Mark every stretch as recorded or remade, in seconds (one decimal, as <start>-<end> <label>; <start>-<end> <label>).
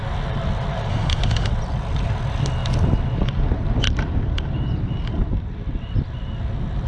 0.0-0.9 recorded; 0.9-1.5 remade; 1.5-6.9 recorded